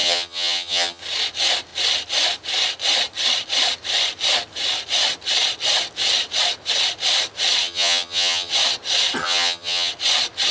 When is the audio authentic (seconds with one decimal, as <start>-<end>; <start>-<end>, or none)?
1.0-7.6; 8.5-9.2; 9.9-10.5